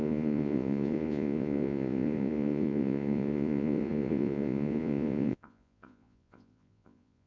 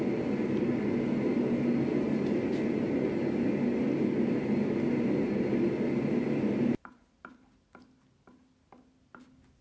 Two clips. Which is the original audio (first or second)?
second